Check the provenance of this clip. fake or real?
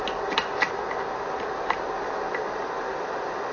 real